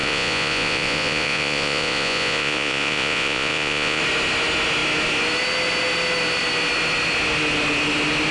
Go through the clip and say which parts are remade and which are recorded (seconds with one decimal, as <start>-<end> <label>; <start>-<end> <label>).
0.0-4.0 remade; 4.0-8.3 recorded

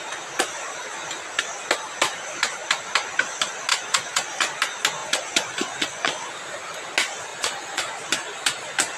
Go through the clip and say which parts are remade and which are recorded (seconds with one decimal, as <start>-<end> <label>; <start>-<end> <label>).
0.0-3.7 recorded; 3.7-4.5 remade; 4.5-5.0 recorded; 5.0-6.2 remade; 6.2-7.3 recorded; 7.3-7.9 remade; 7.9-9.0 recorded